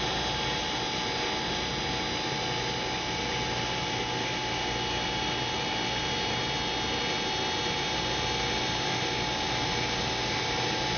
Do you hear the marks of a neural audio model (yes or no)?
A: no